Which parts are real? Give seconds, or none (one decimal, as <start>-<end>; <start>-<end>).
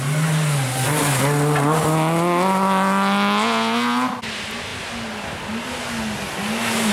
0.0-6.9